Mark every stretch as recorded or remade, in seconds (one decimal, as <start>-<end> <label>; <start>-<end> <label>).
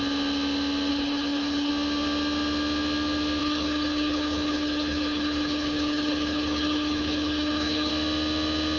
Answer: 0.0-0.9 recorded; 0.9-1.7 remade; 1.7-3.4 recorded; 3.4-7.9 remade; 7.9-8.8 recorded